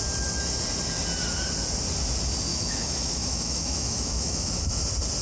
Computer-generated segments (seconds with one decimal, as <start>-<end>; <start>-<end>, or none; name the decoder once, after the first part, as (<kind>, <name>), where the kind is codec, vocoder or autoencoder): 2.5-4.8 (autoencoder, DAC-VAE)